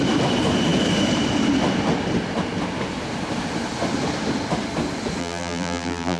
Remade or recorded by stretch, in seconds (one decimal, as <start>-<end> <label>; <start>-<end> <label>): 0.0-5.2 recorded; 5.2-6.2 remade